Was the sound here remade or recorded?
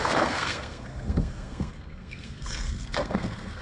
remade